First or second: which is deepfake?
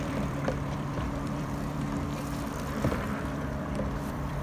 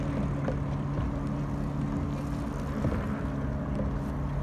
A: first